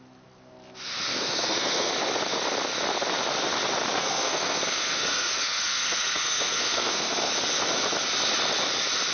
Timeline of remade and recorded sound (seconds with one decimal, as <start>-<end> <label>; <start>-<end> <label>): 0.0-1.1 recorded; 1.1-1.9 remade; 1.9-4.0 recorded; 4.0-7.3 remade; 7.3-9.1 recorded